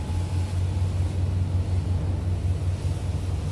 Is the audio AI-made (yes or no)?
no